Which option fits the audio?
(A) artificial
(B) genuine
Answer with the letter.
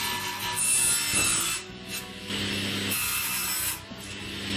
B